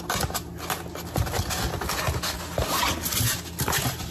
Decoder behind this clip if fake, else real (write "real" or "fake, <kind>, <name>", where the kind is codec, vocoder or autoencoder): real